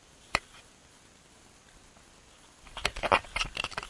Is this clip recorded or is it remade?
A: recorded